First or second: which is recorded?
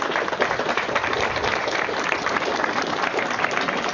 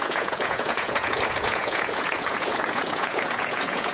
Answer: first